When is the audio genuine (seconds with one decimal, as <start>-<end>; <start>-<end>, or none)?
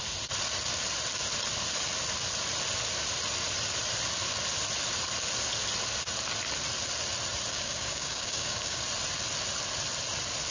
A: 0.0-7.5; 8.8-10.5